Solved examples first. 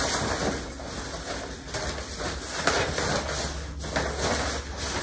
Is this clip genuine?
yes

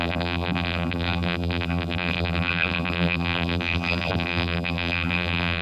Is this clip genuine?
no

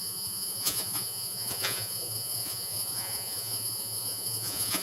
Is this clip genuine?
no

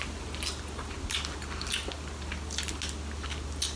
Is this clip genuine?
yes